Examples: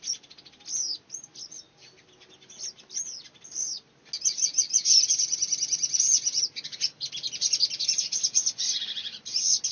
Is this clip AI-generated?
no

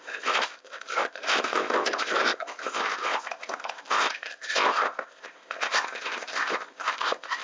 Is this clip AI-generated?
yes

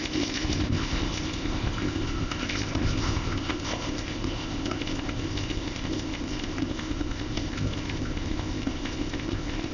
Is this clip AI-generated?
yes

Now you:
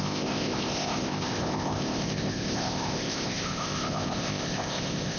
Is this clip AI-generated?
yes